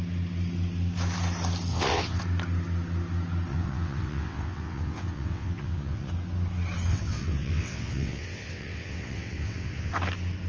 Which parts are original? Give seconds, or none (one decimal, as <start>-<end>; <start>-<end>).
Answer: 0.0-1.7; 2.2-3.5; 6.1-6.9; 9.9-10.5